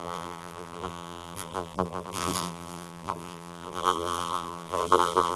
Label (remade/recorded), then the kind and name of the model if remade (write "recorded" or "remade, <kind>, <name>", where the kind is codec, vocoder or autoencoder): remade, vocoder, BigVGAN v2